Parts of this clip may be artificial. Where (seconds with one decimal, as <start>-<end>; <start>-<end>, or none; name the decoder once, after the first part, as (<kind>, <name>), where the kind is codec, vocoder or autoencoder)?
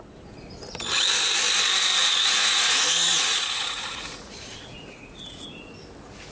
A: 2.0-5.8 (vocoder, Vocos)